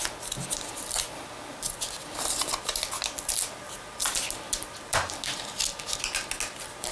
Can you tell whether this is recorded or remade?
recorded